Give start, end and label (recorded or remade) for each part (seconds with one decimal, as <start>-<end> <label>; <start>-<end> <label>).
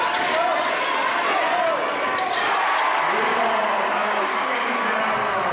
0.0-4.0 recorded; 4.0-4.9 remade; 4.9-5.5 recorded